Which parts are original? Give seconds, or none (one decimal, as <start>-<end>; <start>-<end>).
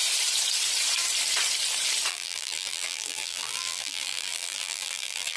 0.0-2.1